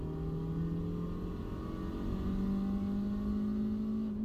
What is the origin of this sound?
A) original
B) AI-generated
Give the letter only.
A